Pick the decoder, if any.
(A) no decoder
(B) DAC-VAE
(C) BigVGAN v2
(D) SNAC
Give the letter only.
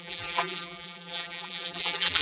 C